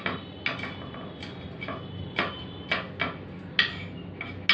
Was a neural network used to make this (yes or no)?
no